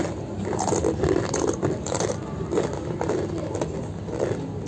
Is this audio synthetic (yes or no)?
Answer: no